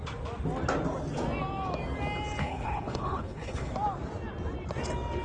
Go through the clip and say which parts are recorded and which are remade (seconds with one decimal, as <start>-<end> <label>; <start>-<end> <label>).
0.0-2.4 recorded; 2.4-3.7 remade; 3.7-5.2 recorded